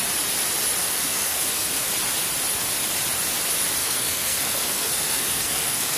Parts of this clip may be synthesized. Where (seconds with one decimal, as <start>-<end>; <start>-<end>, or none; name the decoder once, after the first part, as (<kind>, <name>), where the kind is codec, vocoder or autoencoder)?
0.8-1.9 (codec, SNAC); 3.8-6.0